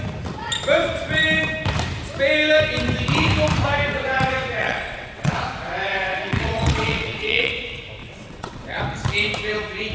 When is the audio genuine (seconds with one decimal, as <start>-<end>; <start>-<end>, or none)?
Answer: 0.0-4.6; 5.4-6.1; 7.5-8.0; 8.8-9.9